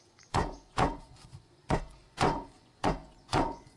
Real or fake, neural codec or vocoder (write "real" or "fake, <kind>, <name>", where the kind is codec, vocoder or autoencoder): fake, vocoder, Vocos